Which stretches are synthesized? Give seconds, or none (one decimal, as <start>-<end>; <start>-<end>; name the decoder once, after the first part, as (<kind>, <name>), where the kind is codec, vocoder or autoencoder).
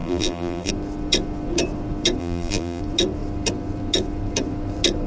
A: 0.0-0.7 (vocoder, BigVGAN v2); 2.2-2.8